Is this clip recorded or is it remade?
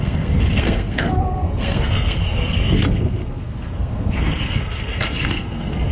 remade